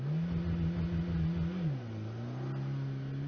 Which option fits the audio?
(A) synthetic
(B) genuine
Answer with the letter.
B